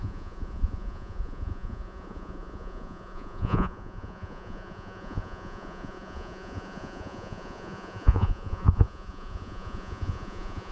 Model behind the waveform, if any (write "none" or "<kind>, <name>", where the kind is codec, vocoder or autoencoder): vocoder, Vocos